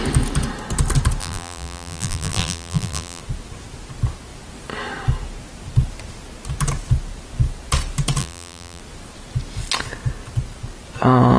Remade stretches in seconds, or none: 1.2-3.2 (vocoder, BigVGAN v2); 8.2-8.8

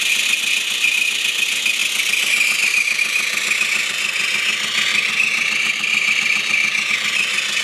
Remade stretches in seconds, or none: 1.8-2.6 (vocoder, BigVGAN v2); 4.9-6.9

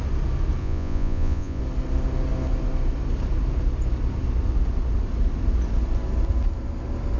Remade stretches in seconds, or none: 0.6-1.6 (vocoder, Vocos)

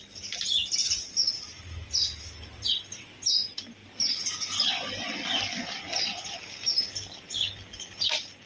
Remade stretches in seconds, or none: none

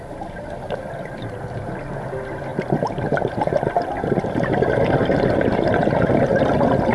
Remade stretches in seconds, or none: none

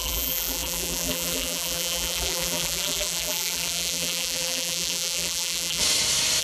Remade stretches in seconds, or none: 0.0-5.8 (vocoder, BigVGAN v2)

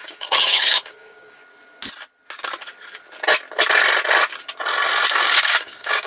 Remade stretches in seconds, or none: 0.0-1.4 (codec, DAC); 5.1-6.1

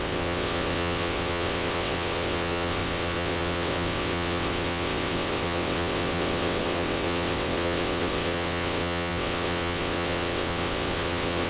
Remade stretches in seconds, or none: 0.0-11.5 (vocoder, WaveNeXt)